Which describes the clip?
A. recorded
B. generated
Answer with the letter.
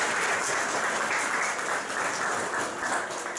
A